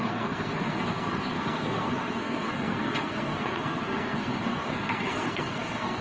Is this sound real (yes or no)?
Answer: no